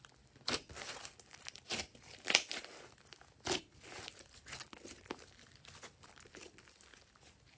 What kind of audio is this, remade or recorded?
recorded